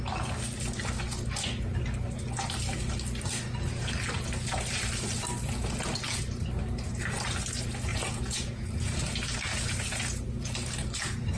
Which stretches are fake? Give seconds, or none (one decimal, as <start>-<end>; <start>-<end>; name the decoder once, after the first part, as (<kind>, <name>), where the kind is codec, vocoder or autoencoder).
7.9-9.0 (vocoder, Vocos); 9.5-10.0